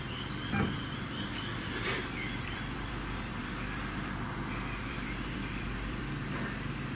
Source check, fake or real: fake